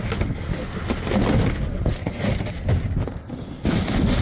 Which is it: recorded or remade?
recorded